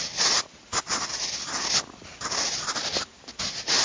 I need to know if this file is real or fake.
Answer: real